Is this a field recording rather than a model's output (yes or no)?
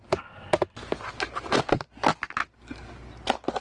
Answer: yes